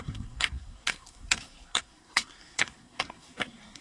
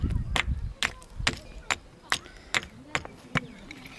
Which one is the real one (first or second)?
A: second